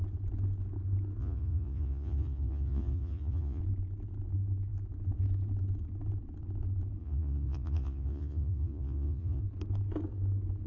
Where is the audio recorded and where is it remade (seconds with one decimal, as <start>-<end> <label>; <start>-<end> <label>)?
0.0-1.2 recorded; 1.2-3.6 remade; 3.6-7.0 recorded; 7.0-9.4 remade; 9.4-10.7 recorded